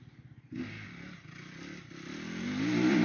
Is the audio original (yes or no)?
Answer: yes